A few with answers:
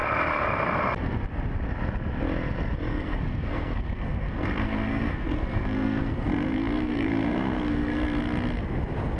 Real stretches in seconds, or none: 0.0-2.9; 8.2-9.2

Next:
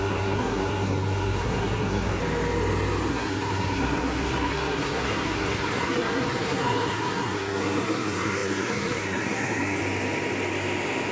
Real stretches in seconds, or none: 2.2-3.1; 9.8-11.1

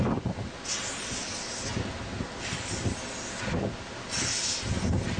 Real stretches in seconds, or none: 0.0-5.2

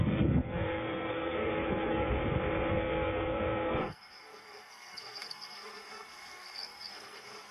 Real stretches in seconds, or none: 2.2-2.7

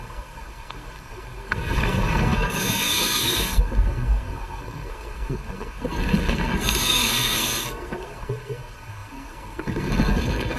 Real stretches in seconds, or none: none